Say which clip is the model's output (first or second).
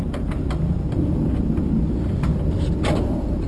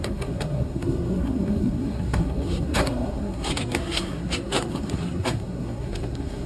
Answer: second